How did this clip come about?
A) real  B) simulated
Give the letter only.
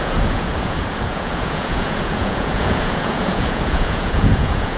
B